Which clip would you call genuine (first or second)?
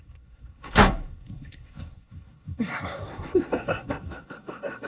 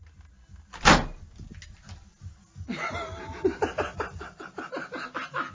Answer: second